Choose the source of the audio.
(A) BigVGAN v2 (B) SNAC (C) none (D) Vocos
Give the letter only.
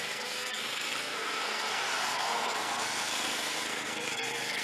B